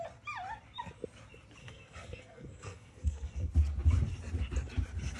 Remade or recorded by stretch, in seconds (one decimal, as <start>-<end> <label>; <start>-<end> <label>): 0.0-1.6 recorded; 1.6-3.5 remade; 3.5-5.2 recorded